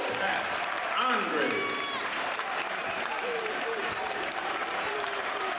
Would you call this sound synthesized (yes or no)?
yes